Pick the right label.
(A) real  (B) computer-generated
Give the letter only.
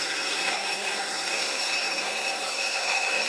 B